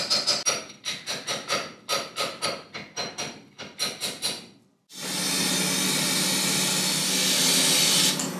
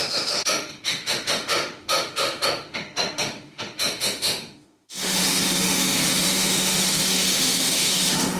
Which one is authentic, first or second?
first